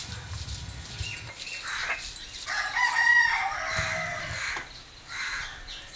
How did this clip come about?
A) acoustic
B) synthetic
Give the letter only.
A